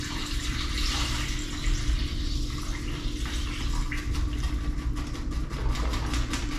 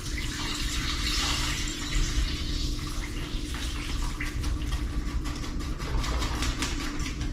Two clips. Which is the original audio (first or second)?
first